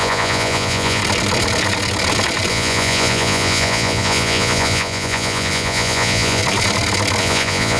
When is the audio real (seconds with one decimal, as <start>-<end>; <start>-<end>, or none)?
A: 1.0-2.5; 6.4-7.2